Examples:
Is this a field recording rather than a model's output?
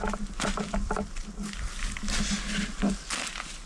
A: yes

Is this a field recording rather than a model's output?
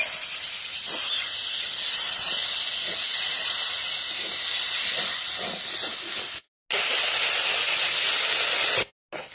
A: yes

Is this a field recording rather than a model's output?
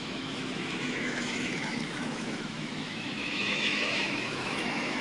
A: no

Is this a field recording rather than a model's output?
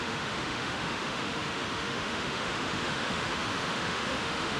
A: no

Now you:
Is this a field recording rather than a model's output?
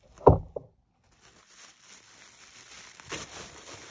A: yes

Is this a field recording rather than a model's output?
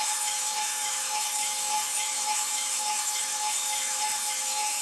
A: no